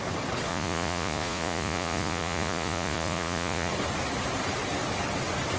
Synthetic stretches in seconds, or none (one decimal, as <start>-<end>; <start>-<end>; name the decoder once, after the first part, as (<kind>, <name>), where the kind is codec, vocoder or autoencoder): 0.5-3.7 (vocoder, Vocos)